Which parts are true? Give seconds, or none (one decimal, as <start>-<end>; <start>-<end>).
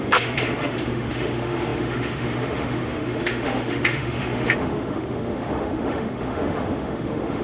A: none